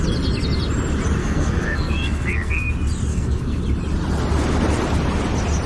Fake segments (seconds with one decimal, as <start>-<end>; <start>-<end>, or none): 1.2-2.7; 3.1-3.6